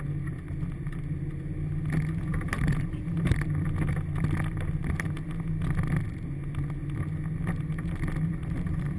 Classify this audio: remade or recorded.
recorded